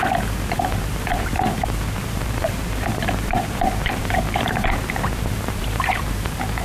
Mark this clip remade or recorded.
remade